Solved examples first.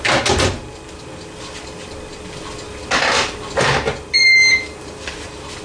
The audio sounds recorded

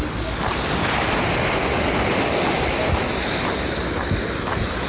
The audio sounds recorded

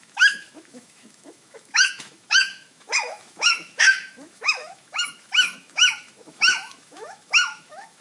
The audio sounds remade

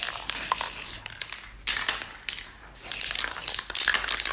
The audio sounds recorded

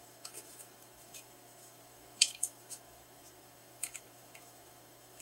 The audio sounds remade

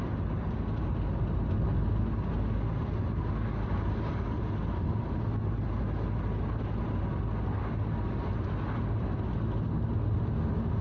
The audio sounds recorded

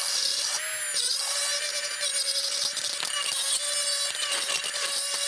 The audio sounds recorded